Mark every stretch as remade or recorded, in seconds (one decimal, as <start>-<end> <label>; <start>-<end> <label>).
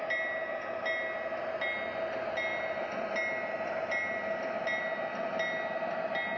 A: 0.0-6.4 recorded